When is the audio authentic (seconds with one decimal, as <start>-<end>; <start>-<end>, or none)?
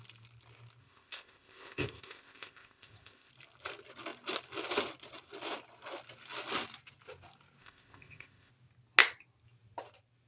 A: 0.0-0.8; 3.3-7.6; 8.5-10.3